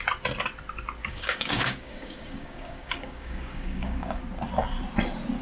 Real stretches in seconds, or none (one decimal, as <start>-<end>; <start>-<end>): 0.0-1.0; 4.2-5.4